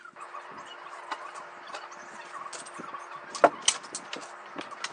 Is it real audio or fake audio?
real